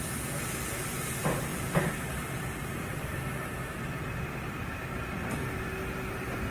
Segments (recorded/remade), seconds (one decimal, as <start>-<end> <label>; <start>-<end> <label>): 0.0-6.5 recorded